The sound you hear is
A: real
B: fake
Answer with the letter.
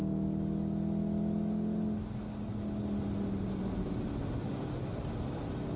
A